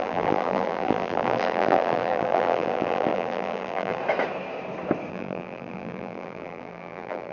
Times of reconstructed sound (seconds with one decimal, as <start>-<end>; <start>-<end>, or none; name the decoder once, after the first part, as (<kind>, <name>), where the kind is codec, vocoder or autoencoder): 0.0-4.0 (vocoder, BigVGAN v2); 5.1-7.3